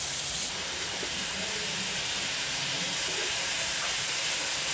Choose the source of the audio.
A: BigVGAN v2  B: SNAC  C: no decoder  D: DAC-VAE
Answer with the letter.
A